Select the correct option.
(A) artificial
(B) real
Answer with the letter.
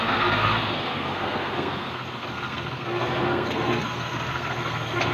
A